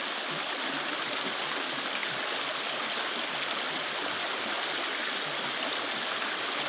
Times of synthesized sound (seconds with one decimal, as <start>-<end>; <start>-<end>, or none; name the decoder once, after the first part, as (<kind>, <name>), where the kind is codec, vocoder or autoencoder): none